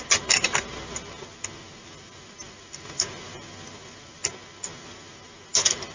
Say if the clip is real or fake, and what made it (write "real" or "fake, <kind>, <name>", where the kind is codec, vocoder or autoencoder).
real